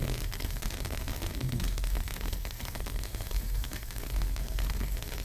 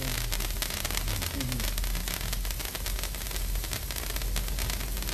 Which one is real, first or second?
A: second